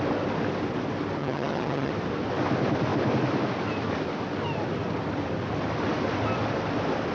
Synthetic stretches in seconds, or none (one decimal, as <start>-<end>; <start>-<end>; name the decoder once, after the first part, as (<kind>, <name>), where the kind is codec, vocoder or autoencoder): 1.2-1.9 (vocoder, HiFi-GAN)